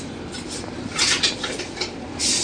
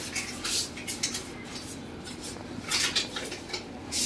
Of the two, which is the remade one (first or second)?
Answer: first